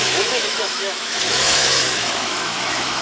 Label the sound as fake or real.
fake